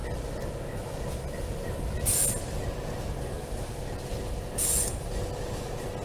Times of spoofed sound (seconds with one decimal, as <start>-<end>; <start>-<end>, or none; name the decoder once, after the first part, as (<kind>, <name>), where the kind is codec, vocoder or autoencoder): none